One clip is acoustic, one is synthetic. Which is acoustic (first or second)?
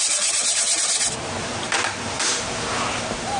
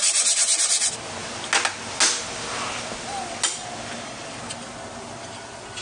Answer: second